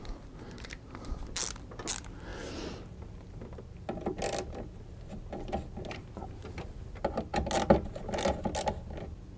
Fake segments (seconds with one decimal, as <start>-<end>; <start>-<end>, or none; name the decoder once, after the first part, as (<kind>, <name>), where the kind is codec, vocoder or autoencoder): none